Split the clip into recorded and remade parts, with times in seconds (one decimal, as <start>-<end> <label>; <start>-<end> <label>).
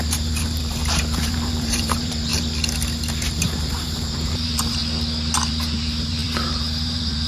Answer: 0.0-2.3 remade; 2.3-3.1 recorded; 3.1-4.8 remade; 4.8-5.5 recorded; 5.5-7.3 remade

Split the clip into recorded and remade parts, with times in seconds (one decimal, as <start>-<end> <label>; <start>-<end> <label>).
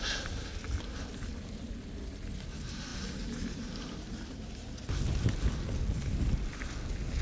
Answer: 0.0-7.2 recorded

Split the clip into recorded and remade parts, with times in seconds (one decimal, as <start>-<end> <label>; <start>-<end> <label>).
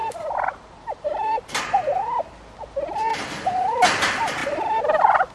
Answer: 0.0-1.6 remade; 1.6-3.1 recorded; 3.1-3.8 remade; 3.8-4.4 recorded; 4.4-5.3 remade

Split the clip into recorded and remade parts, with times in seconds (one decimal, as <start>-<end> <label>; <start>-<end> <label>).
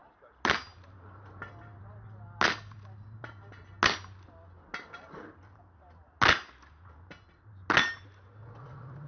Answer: 0.0-9.1 recorded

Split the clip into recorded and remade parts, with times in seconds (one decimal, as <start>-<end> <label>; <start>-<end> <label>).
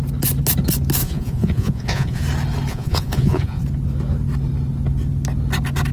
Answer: 0.0-1.0 recorded; 1.0-2.2 remade; 2.2-2.7 recorded; 2.7-3.6 remade; 3.6-5.9 recorded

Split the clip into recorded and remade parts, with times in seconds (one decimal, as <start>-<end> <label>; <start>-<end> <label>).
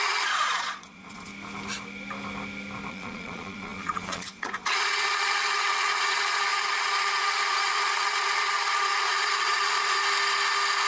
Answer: 0.0-1.3 remade; 1.3-2.9 recorded; 2.9-10.0 remade; 10.0-10.9 recorded